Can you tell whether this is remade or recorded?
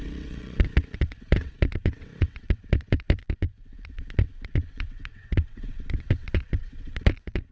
remade